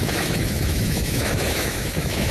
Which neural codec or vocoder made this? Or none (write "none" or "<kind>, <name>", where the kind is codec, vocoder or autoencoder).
autoencoder, DAC-VAE